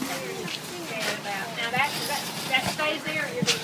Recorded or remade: recorded